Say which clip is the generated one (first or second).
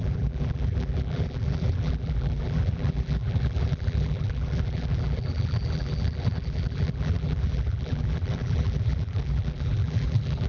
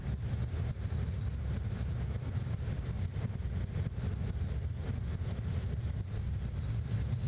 first